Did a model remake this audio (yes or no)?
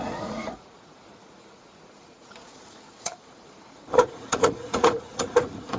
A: yes